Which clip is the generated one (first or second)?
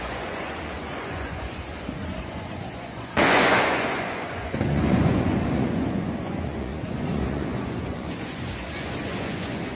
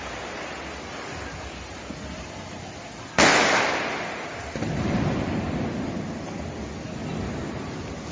first